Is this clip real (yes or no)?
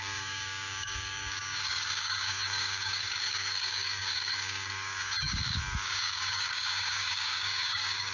no